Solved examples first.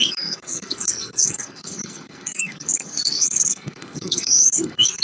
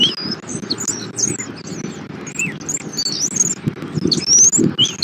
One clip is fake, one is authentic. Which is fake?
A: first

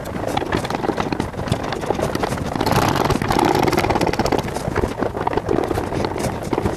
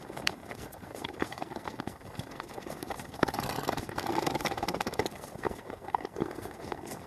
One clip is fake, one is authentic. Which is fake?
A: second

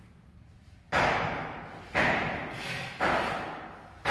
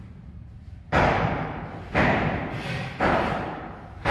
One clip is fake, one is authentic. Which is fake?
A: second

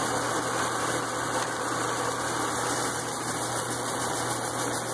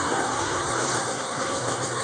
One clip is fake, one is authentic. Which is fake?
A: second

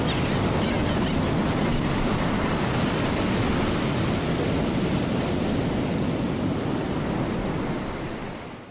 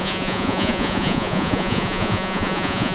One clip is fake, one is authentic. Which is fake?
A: second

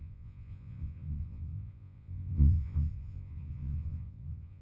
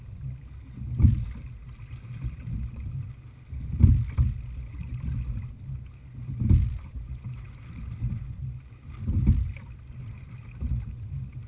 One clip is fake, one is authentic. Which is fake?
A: first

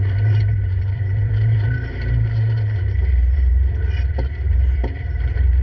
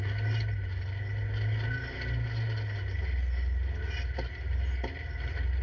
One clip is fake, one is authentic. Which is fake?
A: first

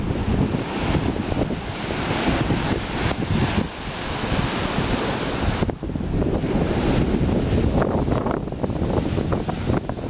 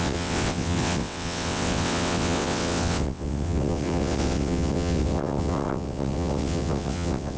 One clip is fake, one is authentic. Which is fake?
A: second